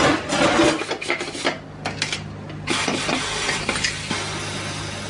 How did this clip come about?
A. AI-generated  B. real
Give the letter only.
B